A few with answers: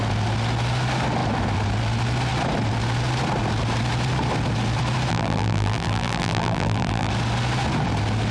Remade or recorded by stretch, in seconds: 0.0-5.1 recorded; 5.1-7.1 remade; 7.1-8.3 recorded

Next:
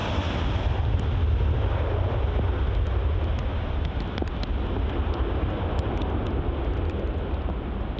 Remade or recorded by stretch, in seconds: 0.0-3.5 recorded; 3.5-4.3 remade; 4.3-8.0 recorded

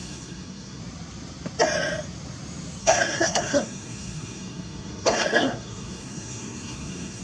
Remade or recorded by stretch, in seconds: 0.0-0.8 remade; 0.8-2.8 recorded; 2.8-7.2 remade

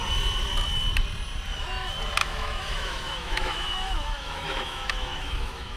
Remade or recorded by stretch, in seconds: 0.0-2.2 recorded; 2.2-5.8 remade

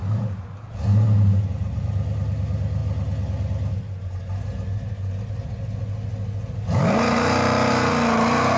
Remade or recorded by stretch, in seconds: 0.0-8.6 recorded

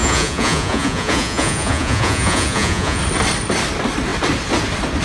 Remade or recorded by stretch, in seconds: 0.0-3.0 remade; 3.0-5.0 recorded

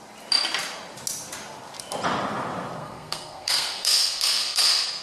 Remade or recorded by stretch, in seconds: 0.0-2.8 recorded; 2.8-5.0 remade